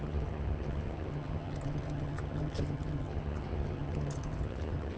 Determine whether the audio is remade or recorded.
remade